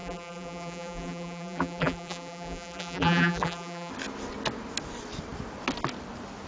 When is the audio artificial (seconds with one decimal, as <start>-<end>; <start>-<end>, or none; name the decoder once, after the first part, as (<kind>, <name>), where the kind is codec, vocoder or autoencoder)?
0.0-3.9 (vocoder, BigVGAN v2)

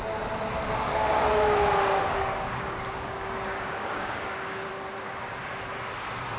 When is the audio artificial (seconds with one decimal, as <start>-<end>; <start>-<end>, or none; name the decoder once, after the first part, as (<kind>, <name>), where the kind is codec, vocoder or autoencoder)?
0.9-4.7 (codec, DAC)

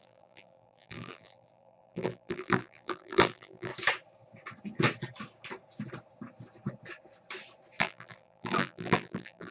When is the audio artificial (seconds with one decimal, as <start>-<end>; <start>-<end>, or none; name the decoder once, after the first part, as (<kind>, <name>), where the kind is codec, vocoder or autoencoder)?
0.0-3.7 (vocoder, BigVGAN v2); 7.8-9.5

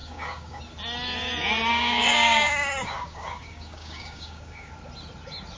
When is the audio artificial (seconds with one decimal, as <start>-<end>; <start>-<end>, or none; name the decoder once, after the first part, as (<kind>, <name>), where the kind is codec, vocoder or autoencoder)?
0.0-0.6 (codec, DAC); 1.7-4.7

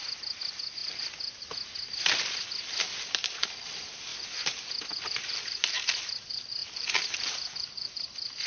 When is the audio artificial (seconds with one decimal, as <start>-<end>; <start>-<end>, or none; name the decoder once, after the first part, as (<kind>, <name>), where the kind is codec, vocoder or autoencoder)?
4.1-4.6 (vocoder, BigVGAN v2); 5.3-6.1; 6.6-7.9